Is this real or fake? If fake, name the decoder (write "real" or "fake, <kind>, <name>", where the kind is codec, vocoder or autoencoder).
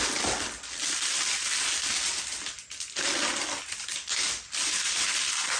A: real